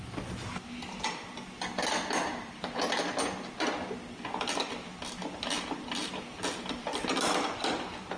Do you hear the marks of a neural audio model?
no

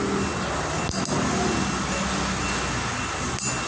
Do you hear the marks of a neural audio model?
no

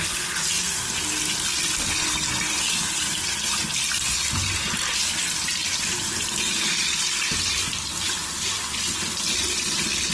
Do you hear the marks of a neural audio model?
no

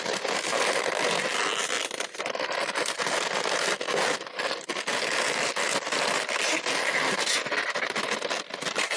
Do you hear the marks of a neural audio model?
no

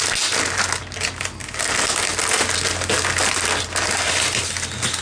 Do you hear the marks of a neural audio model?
no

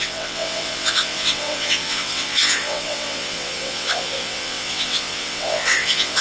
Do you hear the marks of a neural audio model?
yes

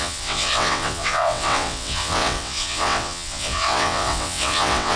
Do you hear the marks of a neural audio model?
yes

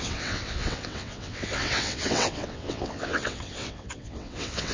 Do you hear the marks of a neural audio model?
yes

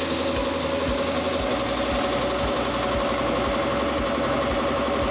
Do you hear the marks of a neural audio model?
no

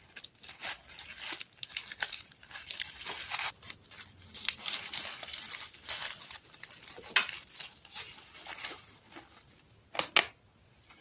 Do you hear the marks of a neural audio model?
no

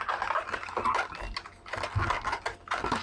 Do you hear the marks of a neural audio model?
no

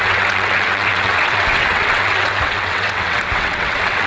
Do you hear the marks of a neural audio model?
yes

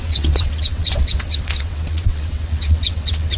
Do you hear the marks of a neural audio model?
yes